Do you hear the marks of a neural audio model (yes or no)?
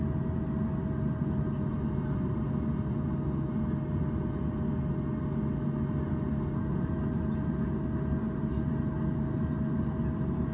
no